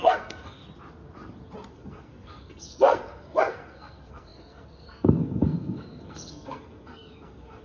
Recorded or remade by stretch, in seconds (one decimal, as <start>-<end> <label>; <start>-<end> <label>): 0.0-0.6 remade; 0.6-1.7 recorded; 1.7-7.6 remade